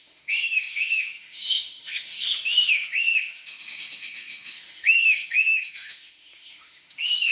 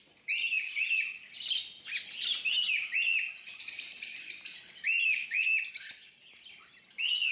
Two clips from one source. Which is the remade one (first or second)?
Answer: first